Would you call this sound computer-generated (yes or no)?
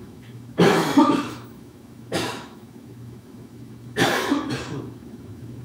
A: yes